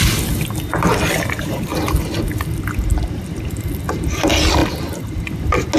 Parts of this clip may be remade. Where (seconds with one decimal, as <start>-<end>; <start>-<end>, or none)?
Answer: none